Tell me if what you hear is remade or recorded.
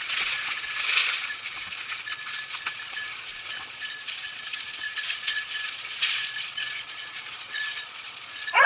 remade